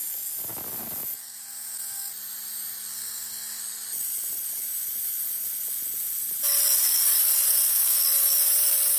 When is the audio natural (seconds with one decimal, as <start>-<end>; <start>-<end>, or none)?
0.0-1.2; 2.1-2.9; 3.6-7.5; 8.0-9.0